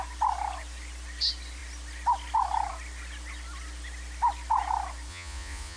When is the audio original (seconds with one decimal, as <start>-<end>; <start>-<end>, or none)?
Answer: 0.0-5.1

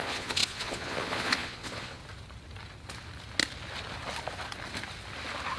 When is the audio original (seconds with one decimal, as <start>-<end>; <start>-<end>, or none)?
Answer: 2.0-5.6

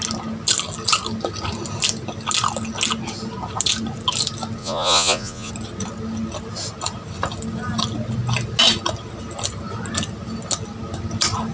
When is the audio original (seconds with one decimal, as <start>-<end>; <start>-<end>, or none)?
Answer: 0.0-4.6; 5.5-11.5

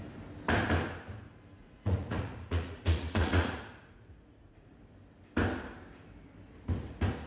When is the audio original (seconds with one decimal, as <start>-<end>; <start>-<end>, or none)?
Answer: 0.0-1.6; 4.8-7.3

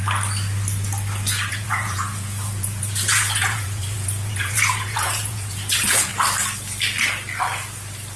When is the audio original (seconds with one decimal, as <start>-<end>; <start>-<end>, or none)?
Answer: 0.0-1.5; 6.1-8.2

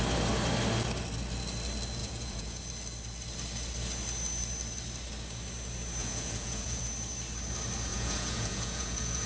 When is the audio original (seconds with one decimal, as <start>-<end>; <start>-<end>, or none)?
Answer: 0.0-2.0; 2.6-6.0; 6.8-7.9

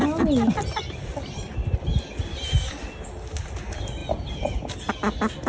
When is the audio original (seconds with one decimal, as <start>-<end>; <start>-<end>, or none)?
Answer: 0.0-5.5

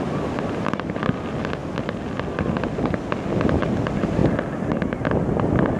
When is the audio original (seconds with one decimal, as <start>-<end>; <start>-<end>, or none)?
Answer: 0.0-5.8